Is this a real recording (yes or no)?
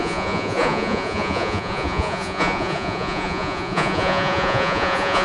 no